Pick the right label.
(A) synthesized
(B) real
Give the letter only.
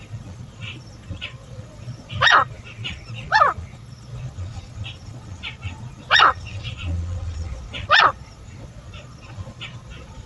A